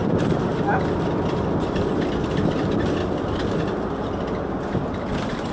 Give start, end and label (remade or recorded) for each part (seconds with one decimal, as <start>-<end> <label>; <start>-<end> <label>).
0.0-5.5 recorded